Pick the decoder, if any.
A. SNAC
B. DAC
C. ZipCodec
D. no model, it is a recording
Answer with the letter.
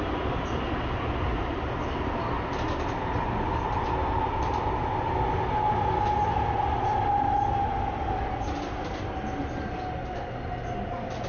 D